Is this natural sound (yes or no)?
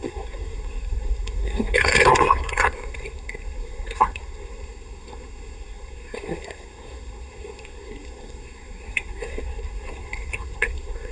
no